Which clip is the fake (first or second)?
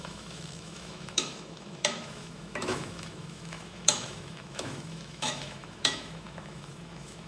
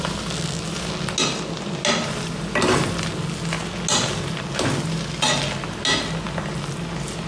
first